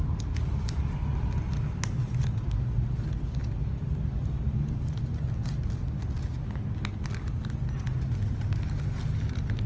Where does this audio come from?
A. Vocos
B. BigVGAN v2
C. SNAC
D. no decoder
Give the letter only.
D